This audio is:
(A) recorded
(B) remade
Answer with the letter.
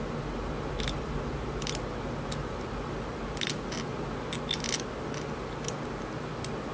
A